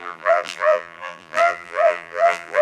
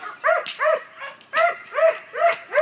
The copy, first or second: first